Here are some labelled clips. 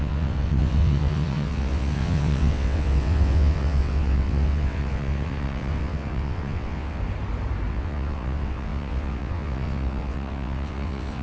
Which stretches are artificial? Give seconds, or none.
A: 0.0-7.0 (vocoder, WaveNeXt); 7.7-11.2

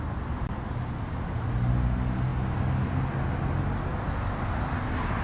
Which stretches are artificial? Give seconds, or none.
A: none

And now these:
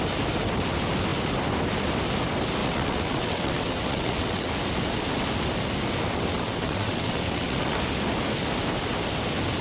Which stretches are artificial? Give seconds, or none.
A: 2.6-4.5 (vocoder, WaveNeXt); 6.3-7.8

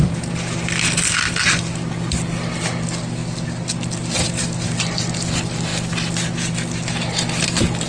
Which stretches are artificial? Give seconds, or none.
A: none